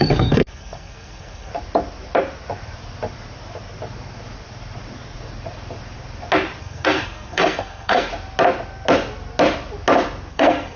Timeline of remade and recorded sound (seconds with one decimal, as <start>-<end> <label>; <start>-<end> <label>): 0.0-1.5 remade; 1.5-6.6 recorded; 6.6-8.1 remade; 8.1-10.3 recorded; 10.3-10.8 remade